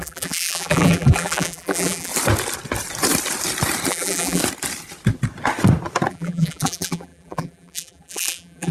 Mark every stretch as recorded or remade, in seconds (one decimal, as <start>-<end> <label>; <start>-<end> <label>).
0.0-2.1 remade; 2.1-3.9 recorded; 3.9-4.4 remade; 4.4-6.1 recorded; 6.1-8.7 remade